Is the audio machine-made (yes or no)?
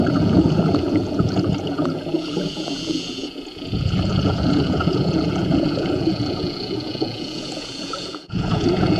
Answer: yes